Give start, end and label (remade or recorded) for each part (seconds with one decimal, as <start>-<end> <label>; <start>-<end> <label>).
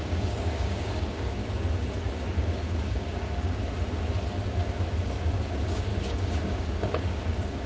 0.0-1.4 remade; 1.4-1.9 recorded; 1.9-3.6 remade; 3.6-5.0 recorded; 5.0-7.7 remade